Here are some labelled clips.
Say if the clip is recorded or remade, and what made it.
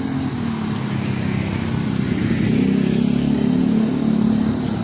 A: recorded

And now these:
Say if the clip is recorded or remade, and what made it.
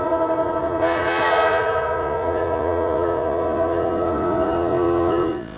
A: remade, vocoder, Vocos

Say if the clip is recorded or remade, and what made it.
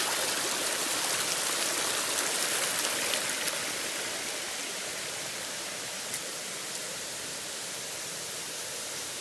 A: recorded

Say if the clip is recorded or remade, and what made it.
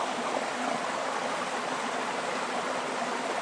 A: recorded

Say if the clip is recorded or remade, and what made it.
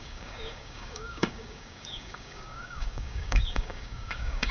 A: remade, codec, DAC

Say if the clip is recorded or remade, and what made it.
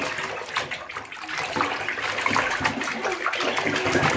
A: recorded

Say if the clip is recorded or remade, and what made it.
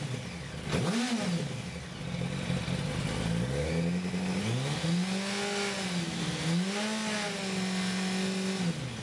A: recorded